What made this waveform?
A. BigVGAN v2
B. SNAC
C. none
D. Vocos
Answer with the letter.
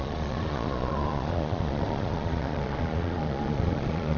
D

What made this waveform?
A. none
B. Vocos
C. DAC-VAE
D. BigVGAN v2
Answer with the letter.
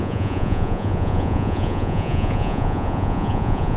B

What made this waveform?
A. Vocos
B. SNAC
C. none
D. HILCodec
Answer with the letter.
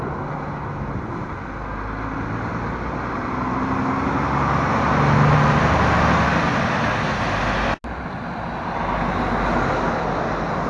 C